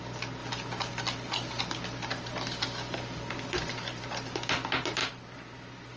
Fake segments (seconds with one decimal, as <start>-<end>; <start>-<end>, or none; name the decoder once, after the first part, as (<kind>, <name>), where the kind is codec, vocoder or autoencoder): none